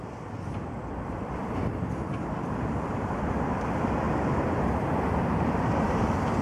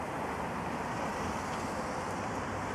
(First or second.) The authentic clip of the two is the second